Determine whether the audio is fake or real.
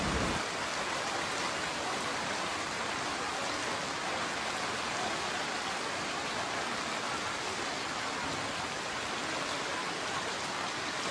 real